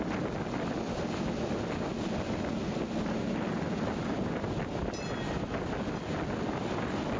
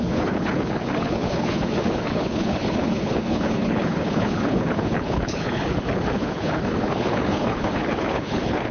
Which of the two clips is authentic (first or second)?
first